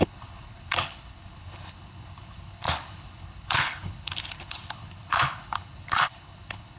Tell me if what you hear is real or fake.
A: fake